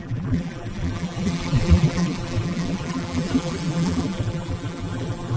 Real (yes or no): no